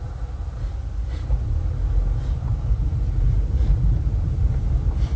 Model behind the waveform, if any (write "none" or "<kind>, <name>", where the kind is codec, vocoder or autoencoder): none